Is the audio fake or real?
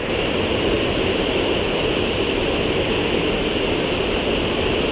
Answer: real